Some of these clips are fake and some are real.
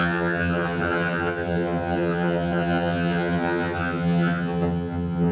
fake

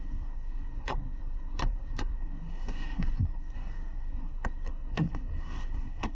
fake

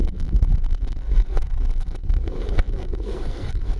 fake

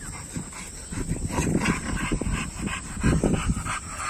real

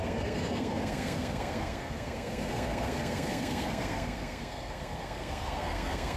fake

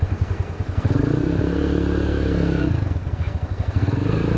fake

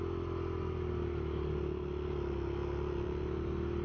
real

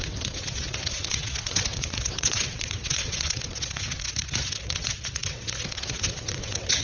fake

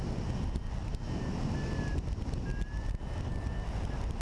real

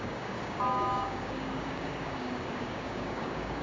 fake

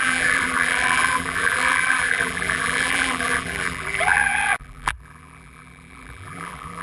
fake